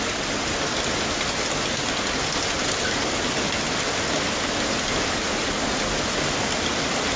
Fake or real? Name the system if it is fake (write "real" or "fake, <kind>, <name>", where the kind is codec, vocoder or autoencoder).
real